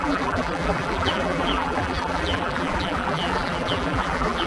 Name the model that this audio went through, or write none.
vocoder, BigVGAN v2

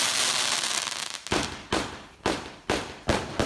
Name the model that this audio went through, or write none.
vocoder, BigVGAN v2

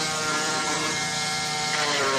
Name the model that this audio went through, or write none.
vocoder, BigVGAN v2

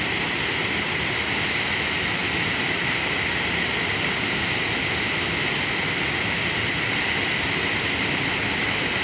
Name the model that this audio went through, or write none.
none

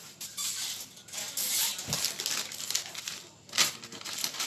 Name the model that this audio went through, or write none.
none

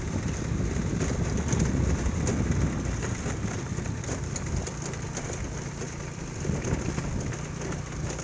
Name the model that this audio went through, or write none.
none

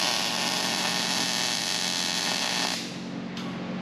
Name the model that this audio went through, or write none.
none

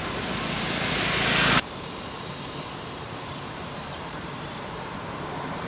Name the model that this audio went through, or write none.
vocoder, BigVGAN v2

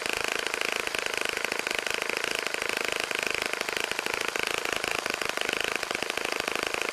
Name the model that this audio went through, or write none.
none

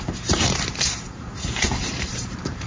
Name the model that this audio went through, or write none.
vocoder, BigVGAN v2